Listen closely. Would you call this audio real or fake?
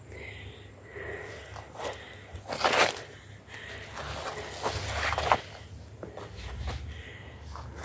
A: real